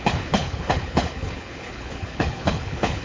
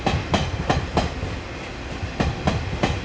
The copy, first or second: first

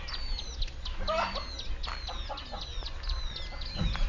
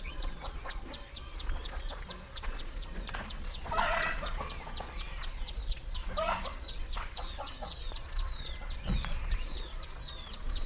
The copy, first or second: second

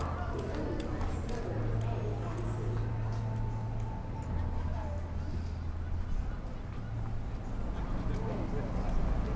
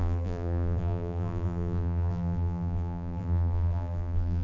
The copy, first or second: second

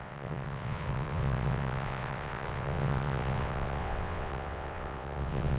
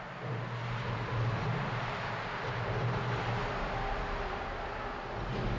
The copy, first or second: first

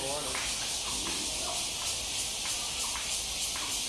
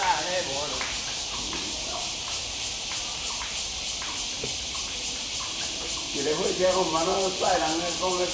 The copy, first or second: second